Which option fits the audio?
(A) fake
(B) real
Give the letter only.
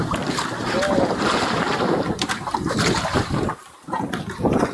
A